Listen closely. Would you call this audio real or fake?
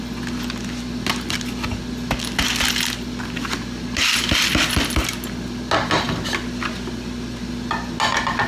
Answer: real